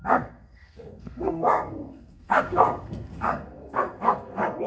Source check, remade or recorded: remade